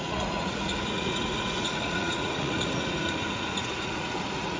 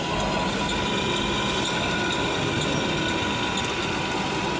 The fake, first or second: first